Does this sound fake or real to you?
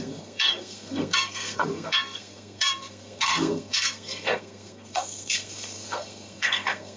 fake